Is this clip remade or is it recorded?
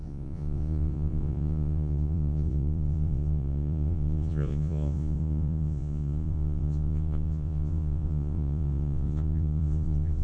remade